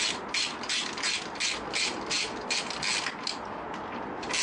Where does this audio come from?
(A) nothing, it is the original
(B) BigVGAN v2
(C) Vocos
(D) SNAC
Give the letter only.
A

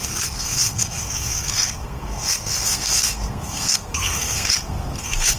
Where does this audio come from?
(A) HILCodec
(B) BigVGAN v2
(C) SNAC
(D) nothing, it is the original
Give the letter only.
C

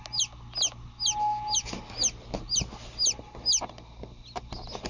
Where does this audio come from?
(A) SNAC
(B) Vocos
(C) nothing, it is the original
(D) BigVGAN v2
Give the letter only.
C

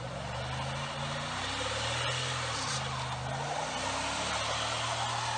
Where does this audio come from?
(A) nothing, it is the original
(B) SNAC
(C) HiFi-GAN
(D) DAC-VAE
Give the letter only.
A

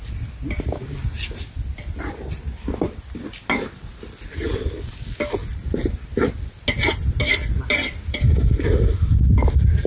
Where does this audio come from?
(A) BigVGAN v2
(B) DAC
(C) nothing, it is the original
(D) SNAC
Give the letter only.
C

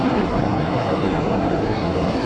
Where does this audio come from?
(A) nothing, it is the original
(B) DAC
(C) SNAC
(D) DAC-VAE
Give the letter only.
C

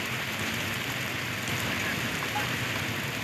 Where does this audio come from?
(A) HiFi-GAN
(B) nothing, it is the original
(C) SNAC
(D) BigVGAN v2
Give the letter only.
B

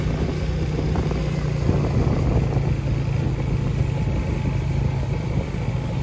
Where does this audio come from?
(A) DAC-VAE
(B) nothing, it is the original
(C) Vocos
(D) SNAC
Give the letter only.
B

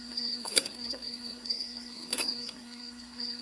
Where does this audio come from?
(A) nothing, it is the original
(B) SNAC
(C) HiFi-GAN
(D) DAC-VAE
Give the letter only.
B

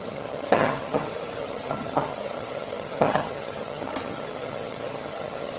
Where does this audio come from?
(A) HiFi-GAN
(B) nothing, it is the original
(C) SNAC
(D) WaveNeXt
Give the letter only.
A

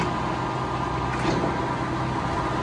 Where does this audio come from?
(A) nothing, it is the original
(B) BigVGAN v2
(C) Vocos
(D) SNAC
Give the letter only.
A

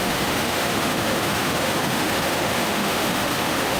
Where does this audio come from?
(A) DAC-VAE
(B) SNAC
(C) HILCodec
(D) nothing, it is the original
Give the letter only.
A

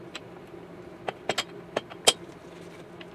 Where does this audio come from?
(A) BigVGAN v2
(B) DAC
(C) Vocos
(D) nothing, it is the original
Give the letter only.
D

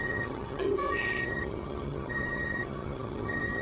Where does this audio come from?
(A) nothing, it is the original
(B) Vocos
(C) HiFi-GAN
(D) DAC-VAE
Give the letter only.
C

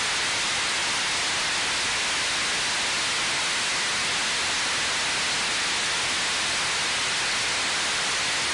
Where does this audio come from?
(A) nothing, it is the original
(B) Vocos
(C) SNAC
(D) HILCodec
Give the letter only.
A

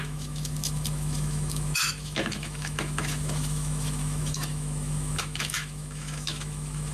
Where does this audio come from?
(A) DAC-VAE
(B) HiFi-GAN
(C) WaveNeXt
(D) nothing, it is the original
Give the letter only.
A